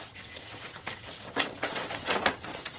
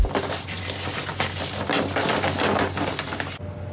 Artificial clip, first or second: first